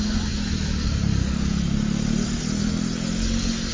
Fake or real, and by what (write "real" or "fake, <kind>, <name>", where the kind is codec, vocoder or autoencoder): real